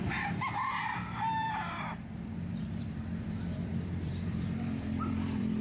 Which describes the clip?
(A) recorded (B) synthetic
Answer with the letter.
B